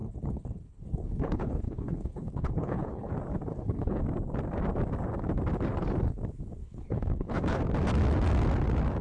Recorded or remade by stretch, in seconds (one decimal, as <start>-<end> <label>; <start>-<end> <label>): 0.0-3.1 remade; 3.1-3.5 recorded; 3.5-4.0 remade; 4.0-6.6 recorded; 6.6-7.6 remade; 7.6-9.0 recorded

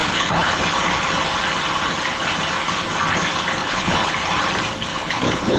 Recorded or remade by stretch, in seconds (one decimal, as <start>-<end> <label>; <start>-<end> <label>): 0.0-0.6 remade; 0.6-3.6 recorded; 3.6-4.1 remade; 4.1-4.9 recorded; 4.9-5.6 remade

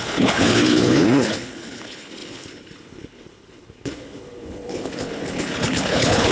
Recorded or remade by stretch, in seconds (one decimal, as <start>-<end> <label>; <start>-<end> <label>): 0.0-6.3 remade